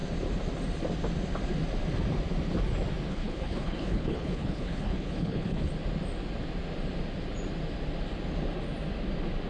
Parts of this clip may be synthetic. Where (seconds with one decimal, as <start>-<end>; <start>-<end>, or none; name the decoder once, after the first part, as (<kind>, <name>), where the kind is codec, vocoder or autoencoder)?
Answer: 3.1-5.7 (codec, HILCodec)